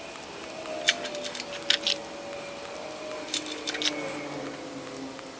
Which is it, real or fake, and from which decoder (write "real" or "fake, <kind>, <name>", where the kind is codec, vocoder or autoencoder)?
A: real